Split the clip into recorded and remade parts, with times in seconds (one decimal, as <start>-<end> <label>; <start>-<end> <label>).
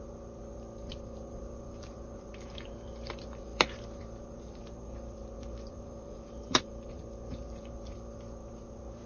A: 0.0-0.4 remade; 0.4-0.9 recorded; 0.9-9.1 remade